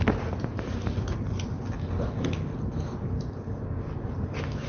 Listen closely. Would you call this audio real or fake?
real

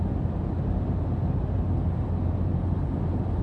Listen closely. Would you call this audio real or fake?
real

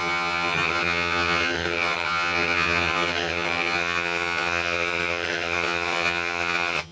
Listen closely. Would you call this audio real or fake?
fake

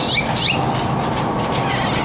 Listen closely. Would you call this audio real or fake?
real